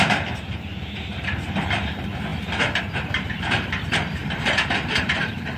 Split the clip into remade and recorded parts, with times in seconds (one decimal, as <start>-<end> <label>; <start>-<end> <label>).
0.0-0.7 remade; 0.7-1.3 recorded; 1.3-5.6 remade